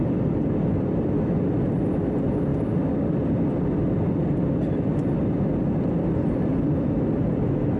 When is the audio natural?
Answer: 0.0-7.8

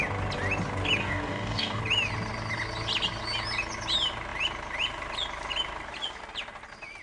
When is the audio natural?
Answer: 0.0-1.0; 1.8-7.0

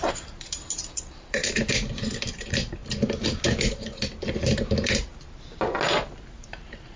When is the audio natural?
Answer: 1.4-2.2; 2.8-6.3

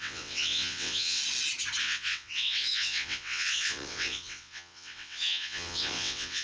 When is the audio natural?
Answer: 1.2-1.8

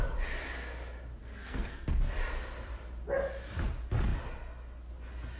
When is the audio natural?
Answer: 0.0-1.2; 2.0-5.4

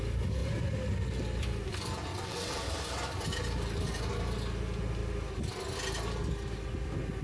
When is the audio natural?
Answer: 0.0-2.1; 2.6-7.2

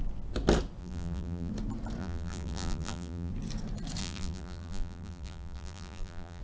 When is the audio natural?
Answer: 0.0-0.8; 1.5-2.0; 3.3-4.0